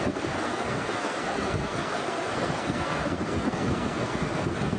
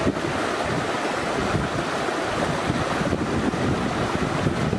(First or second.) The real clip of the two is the second